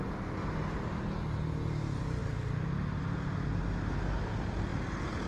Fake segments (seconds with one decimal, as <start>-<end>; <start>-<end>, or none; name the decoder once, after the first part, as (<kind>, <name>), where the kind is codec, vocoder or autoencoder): none